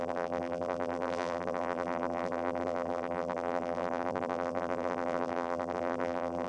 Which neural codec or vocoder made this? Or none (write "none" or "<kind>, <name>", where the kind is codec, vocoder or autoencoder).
vocoder, BigVGAN v2